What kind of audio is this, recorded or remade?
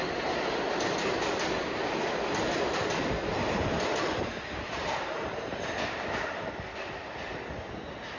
recorded